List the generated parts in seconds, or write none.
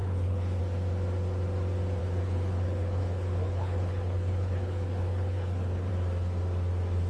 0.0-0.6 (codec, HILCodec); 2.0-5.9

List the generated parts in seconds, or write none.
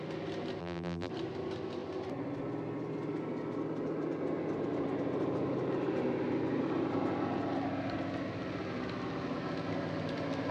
0.6-1.1 (vocoder, BigVGAN v2)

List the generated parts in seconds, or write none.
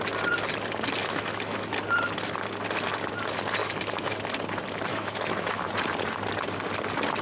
1.0-1.7 (autoencoder, DAC-VAE); 3.6-4.2; 4.9-5.7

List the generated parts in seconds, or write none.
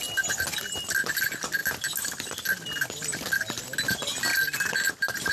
none